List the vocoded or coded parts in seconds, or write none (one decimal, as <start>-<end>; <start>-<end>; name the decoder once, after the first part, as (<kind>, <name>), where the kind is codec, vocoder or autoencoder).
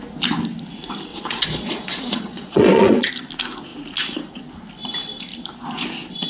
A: 1.1-3.1 (vocoder, Vocos)